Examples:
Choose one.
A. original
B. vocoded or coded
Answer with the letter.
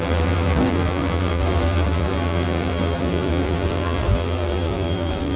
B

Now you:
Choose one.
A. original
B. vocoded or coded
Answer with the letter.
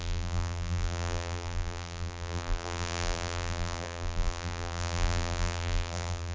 B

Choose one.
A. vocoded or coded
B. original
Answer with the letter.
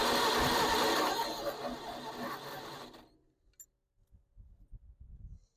B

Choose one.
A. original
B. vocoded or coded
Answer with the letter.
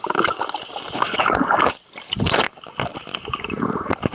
A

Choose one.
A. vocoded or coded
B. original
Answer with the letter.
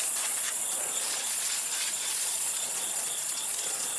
A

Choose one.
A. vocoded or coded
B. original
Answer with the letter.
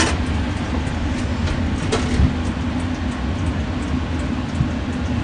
B